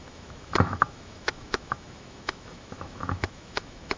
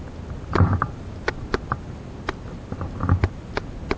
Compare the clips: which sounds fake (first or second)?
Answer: first